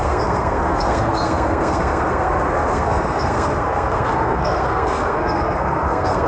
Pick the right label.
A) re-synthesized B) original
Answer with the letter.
A